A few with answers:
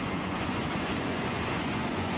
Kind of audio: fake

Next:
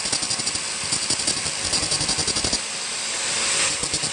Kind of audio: real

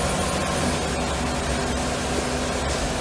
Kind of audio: real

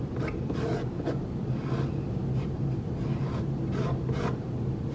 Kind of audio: real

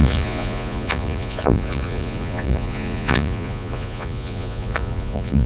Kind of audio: fake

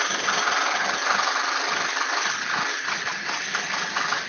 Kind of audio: real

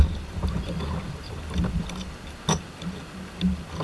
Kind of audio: real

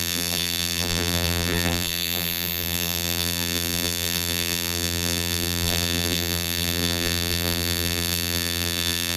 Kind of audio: fake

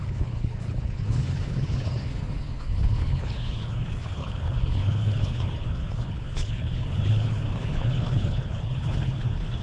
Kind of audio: fake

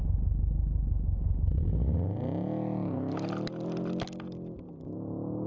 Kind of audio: real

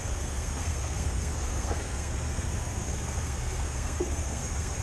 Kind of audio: fake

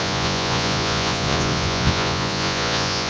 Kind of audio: fake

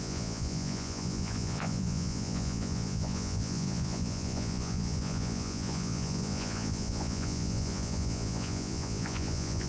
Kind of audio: fake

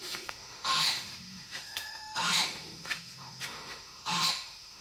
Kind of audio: fake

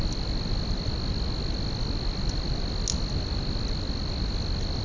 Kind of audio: real